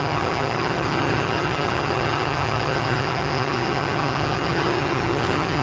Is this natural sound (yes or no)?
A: no